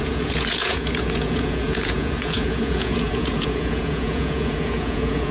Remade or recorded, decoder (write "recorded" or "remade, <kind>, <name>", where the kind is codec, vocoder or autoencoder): remade, vocoder, Vocos